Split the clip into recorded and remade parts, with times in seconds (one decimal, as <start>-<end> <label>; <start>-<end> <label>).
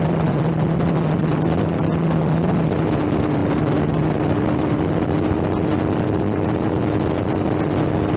0.0-8.2 recorded